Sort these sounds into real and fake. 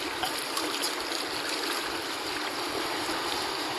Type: real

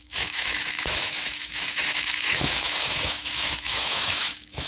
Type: fake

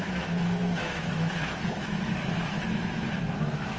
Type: fake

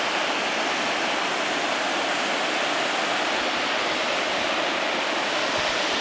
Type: real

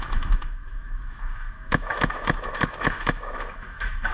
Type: fake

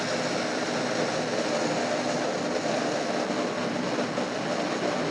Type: real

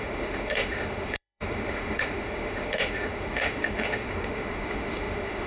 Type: fake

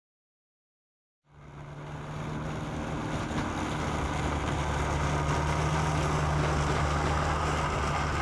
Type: real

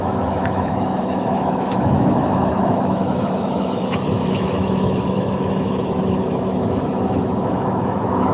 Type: fake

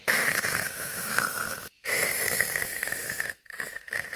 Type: fake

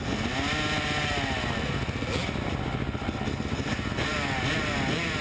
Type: real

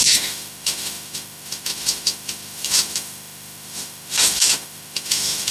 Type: fake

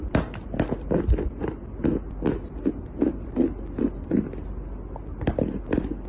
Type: real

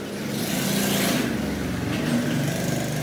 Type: real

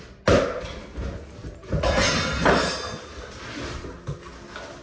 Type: real